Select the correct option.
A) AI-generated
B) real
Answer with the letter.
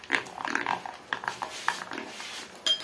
B